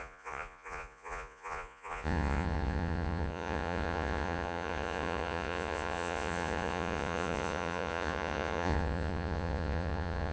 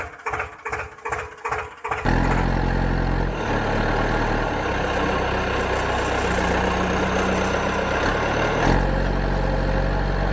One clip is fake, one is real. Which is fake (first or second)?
first